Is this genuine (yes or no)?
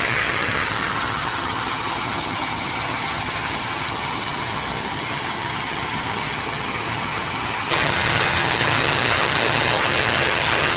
no